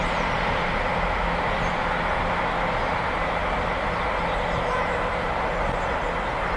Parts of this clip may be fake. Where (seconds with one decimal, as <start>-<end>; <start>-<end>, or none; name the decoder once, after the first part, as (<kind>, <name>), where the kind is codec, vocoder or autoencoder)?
0.0-0.8 (vocoder, BigVGAN v2)